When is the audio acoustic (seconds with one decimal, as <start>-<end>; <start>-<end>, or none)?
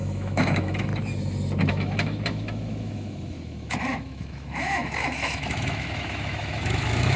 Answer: 0.9-1.7